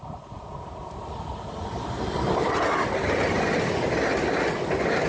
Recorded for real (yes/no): yes